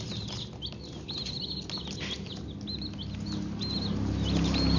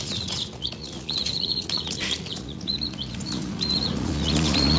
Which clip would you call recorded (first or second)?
first